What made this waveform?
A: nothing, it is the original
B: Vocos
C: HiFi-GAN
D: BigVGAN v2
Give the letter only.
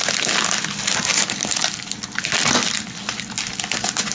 A